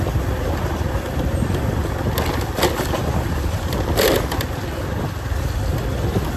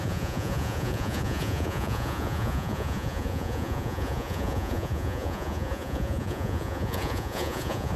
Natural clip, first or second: first